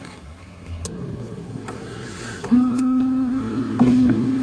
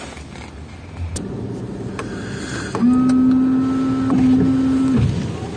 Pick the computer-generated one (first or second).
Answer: first